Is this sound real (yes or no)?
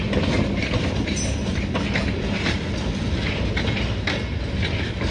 yes